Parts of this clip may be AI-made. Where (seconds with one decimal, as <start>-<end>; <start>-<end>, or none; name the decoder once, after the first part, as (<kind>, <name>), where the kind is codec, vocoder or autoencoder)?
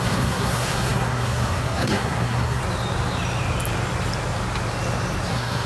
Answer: 0.0-2.6 (codec, SNAC); 5.3-5.7